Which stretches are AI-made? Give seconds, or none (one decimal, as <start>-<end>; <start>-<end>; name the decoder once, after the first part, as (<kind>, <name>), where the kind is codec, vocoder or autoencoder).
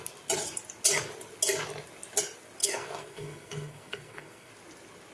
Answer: 2.6-4.5 (codec, SNAC)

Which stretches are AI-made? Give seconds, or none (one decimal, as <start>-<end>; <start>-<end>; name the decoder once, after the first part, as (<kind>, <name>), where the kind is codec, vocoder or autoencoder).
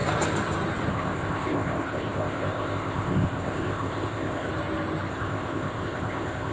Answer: 0.9-4.5 (codec, ZipCodec); 5.1-6.5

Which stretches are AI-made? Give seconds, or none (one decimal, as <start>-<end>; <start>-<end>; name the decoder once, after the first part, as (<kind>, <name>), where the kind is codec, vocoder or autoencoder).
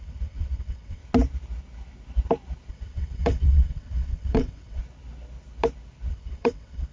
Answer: 0.0-1.0 (vocoder, WaveNeXt); 2.7-4.8; 6.1-6.9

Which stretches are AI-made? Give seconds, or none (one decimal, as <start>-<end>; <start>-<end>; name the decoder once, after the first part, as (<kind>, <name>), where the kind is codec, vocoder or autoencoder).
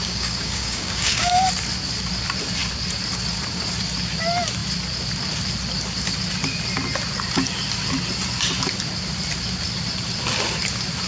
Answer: 0.0-1.5 (codec, DAC)